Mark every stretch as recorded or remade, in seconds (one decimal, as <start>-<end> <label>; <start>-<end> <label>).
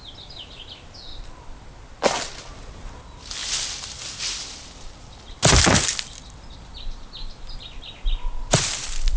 0.0-9.2 recorded